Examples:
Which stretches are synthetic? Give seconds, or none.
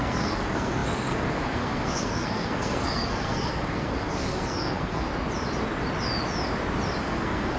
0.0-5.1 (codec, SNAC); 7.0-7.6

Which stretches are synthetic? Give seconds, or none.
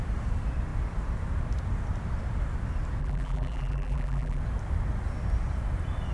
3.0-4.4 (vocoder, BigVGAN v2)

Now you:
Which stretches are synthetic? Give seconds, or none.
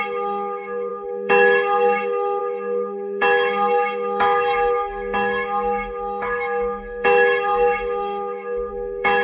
0.0-9.2 (autoencoder, DAC-VAE)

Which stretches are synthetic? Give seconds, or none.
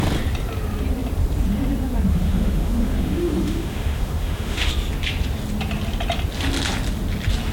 2.1-4.7 (autoencoder, DAC-VAE)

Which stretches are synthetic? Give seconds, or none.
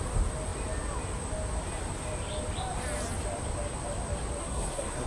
4.4-5.1 (codec, SNAC)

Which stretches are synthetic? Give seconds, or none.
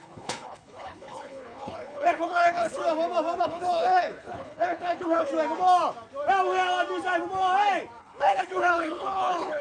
0.0-2.8 (codec, HILCodec); 3.4-5.3; 8.0-9.6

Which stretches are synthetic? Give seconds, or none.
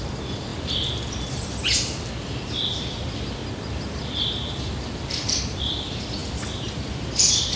0.0-3.4 (vocoder, BigVGAN v2); 4.5-7.6